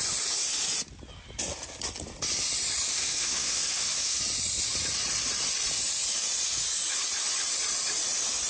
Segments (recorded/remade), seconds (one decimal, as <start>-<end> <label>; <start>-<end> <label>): 0.0-2.9 recorded; 2.9-4.2 remade; 4.2-8.5 recorded